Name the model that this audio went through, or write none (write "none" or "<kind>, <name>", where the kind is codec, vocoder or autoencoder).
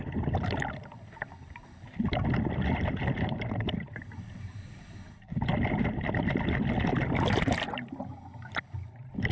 none